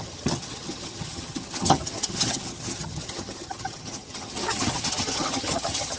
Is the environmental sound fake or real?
fake